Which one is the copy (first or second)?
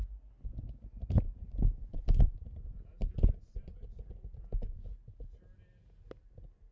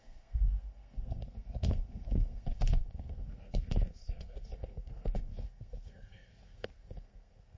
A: second